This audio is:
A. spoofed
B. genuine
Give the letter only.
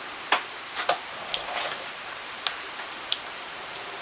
A